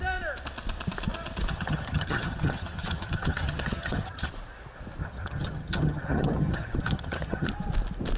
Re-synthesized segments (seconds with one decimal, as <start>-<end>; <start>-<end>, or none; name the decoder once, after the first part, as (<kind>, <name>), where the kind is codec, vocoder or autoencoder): 1.5-4.3 (vocoder, HiFi-GAN); 5.0-7.5